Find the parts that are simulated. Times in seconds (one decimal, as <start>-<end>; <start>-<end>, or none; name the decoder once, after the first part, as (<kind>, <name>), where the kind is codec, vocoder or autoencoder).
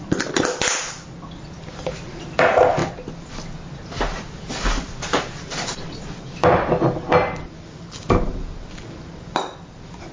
none